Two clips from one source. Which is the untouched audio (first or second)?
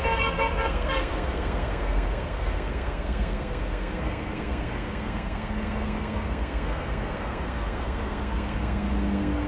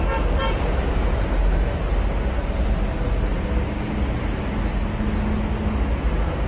second